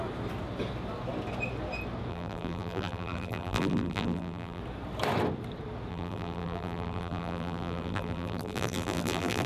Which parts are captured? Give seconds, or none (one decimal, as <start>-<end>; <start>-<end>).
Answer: 0.0-2.1; 4.6-5.9